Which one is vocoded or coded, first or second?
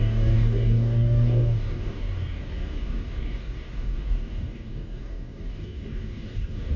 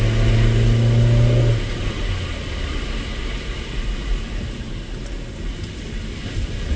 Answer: first